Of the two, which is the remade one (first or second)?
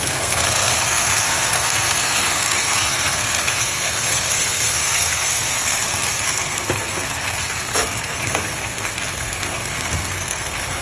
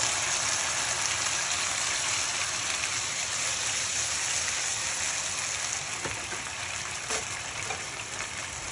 first